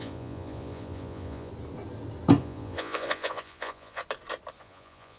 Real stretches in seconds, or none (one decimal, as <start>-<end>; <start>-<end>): 1.5-2.4; 4.0-4.6